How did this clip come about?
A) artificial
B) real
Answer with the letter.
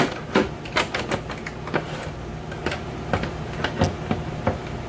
B